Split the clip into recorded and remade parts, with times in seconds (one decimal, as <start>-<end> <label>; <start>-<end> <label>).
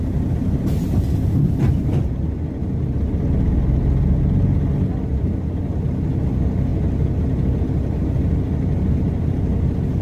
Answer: 0.0-10.0 recorded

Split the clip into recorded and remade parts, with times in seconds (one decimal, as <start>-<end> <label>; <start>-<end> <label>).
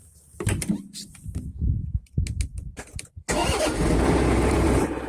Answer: 0.0-3.7 remade; 3.7-4.5 recorded; 4.5-5.1 remade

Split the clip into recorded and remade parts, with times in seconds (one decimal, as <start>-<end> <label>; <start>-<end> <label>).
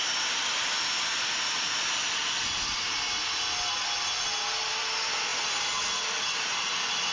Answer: 0.0-7.1 recorded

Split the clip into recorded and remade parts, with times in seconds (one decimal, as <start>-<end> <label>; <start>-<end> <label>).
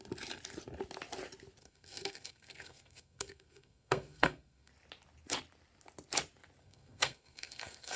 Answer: 0.0-1.6 recorded; 1.6-4.7 remade; 4.7-6.6 recorded; 6.6-8.0 remade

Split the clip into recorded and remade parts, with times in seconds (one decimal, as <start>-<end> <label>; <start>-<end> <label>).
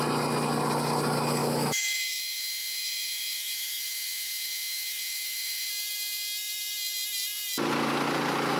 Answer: 0.0-1.4 recorded; 1.4-5.7 remade; 5.7-8.6 recorded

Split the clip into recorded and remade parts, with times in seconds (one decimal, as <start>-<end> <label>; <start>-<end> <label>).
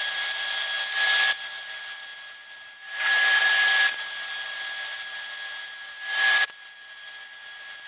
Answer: 0.0-7.9 recorded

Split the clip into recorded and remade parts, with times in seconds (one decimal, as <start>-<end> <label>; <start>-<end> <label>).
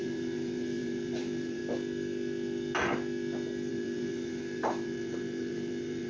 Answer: 0.0-1.6 remade; 1.6-3.7 recorded; 3.7-6.1 remade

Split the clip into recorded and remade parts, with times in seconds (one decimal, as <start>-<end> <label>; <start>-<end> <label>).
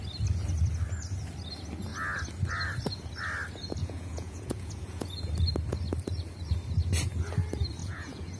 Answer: 0.0-3.8 recorded; 3.8-5.3 remade; 5.3-7.8 recorded; 7.8-8.4 remade